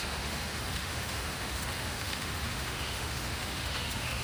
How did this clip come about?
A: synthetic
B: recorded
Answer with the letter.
A